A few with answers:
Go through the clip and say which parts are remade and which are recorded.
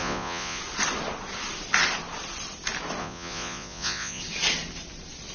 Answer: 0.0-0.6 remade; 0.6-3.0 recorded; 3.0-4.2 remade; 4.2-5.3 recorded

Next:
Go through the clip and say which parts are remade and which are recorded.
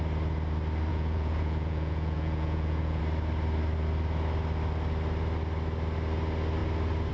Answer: 0.0-0.9 recorded; 0.9-3.0 remade; 3.0-7.1 recorded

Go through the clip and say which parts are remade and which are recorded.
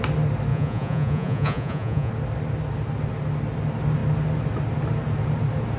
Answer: 0.0-0.5 recorded; 0.5-2.1 remade; 2.1-5.8 recorded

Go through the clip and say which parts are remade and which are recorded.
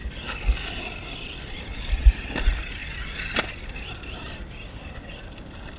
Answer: 0.0-5.8 recorded